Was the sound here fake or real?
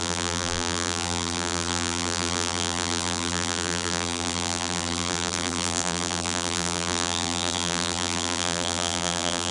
fake